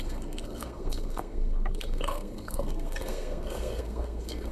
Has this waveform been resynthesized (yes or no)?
yes